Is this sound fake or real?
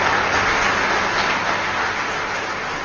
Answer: real